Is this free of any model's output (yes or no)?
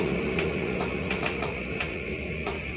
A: no